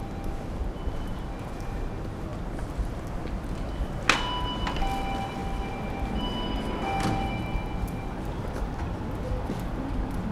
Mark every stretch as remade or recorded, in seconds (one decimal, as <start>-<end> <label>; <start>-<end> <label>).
0.0-10.3 recorded